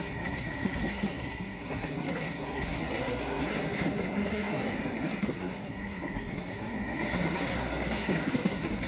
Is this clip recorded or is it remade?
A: remade